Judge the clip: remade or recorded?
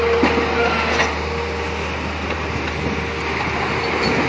recorded